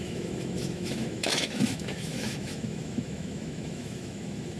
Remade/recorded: remade